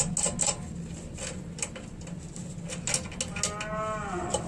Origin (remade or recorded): recorded